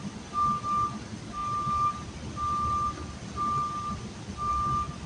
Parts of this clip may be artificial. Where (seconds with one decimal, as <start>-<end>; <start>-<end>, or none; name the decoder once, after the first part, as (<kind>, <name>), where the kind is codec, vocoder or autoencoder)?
none